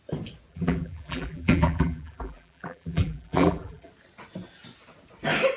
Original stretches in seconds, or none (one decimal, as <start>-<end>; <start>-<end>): 0.0-0.5; 3.9-5.6